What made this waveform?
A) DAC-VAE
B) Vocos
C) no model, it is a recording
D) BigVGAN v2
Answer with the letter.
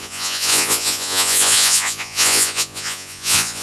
B